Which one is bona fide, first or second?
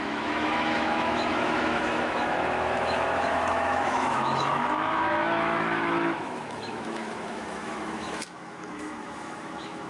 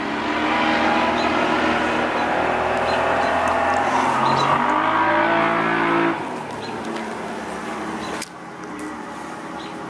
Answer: second